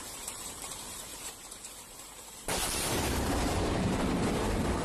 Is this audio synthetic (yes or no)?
yes